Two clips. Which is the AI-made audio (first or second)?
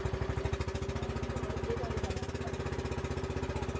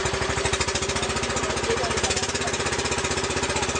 second